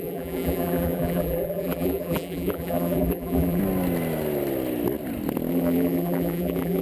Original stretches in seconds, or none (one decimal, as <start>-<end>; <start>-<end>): 3.6-5.5